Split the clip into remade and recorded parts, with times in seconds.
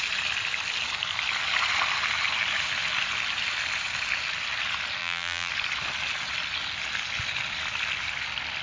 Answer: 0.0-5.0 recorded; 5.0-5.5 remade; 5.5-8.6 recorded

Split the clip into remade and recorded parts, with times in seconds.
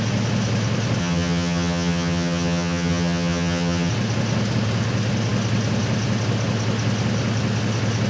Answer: 0.0-1.0 recorded; 1.0-3.9 remade; 3.9-8.1 recorded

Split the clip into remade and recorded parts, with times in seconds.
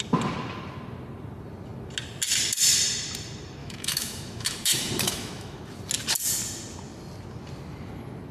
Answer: 0.0-3.6 recorded; 3.6-5.6 remade; 5.6-8.3 recorded